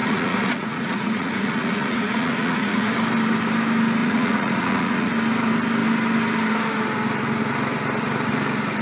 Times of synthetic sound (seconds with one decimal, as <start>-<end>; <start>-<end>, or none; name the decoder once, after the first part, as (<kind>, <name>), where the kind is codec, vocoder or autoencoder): 0.0-2.9 (vocoder, Vocos); 4.0-5.1